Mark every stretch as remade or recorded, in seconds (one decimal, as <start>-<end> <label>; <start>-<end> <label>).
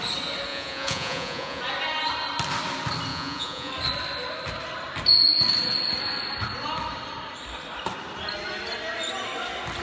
0.0-0.5 recorded; 0.5-1.6 remade; 1.6-3.1 recorded; 3.1-3.7 remade; 3.7-9.8 recorded